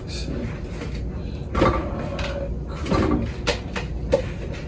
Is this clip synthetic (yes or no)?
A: no